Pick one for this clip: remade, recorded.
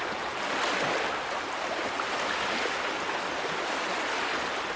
recorded